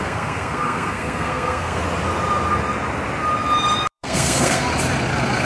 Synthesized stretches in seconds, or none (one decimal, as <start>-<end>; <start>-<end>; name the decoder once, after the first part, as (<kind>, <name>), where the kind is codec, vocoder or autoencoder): 0.0-1.8 (codec, SNAC); 3.9-4.7